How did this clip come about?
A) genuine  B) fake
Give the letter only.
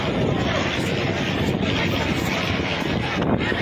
B